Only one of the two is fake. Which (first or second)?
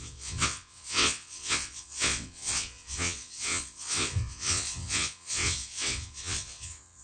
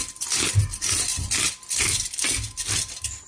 first